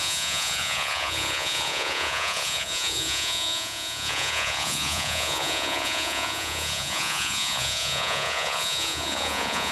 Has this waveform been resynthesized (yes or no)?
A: yes